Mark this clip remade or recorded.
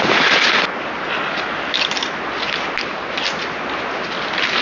recorded